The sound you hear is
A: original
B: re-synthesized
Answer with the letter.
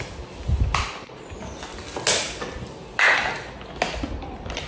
A